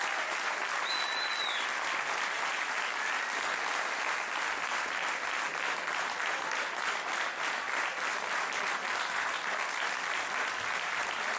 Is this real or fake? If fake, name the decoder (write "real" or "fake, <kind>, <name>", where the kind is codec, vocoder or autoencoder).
real